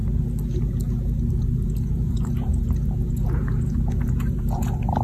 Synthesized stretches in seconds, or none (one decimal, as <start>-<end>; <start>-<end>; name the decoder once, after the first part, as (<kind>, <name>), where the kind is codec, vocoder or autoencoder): 1.4-5.0 (vocoder, Vocos)